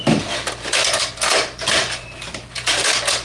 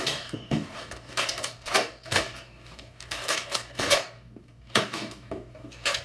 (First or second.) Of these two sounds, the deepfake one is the second